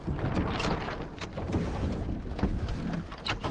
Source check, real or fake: real